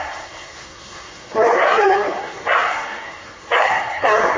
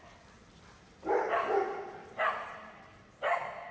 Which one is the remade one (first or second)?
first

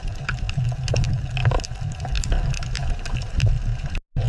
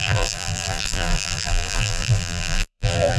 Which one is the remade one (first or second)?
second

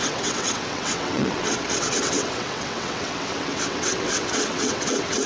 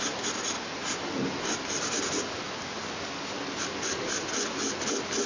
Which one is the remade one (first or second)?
first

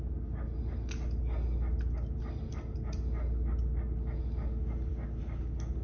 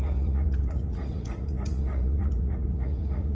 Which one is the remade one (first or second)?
second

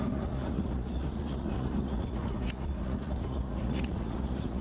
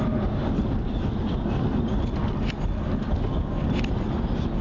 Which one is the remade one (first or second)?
first